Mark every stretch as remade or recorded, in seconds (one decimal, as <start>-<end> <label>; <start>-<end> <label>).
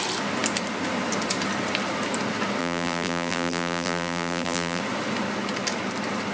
0.0-2.6 recorded; 2.6-4.8 remade; 4.8-6.3 recorded